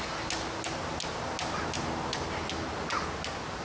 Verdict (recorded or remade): recorded